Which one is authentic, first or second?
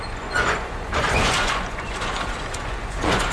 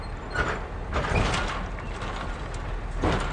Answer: second